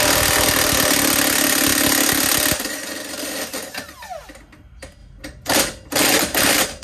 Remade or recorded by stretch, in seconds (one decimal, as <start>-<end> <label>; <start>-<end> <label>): 0.0-6.8 recorded

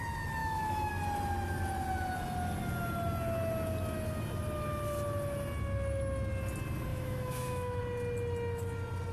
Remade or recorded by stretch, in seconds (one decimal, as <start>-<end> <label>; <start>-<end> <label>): 0.0-0.4 recorded; 0.4-0.9 remade; 0.9-6.9 recorded; 6.9-7.8 remade; 7.8-9.1 recorded

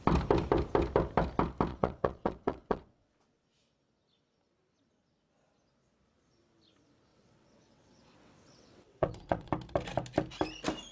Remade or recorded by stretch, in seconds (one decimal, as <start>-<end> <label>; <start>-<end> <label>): 0.0-1.7 recorded; 1.7-3.1 remade; 3.1-7.1 recorded; 7.1-9.5 remade; 9.5-10.9 recorded

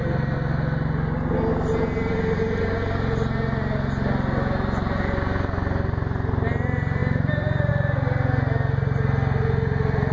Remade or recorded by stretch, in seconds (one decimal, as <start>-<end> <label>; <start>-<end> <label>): 0.0-7.0 recorded; 7.0-7.7 remade; 7.7-10.1 recorded

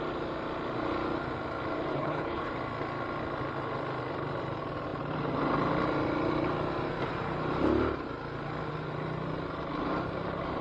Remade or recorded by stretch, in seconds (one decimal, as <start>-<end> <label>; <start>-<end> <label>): 0.0-1.9 recorded; 1.9-2.5 remade; 2.5-10.6 recorded

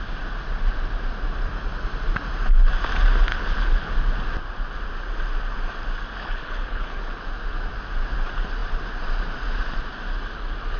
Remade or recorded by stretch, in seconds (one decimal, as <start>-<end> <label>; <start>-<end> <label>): 0.0-3.3 recorded; 3.3-3.9 remade; 3.9-6.2 recorded; 6.2-7.2 remade; 7.2-10.8 recorded

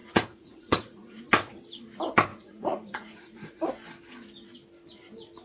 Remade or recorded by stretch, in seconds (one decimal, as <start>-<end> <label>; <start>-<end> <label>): 0.0-1.2 remade; 1.2-2.3 recorded; 2.3-3.7 remade; 3.7-5.4 recorded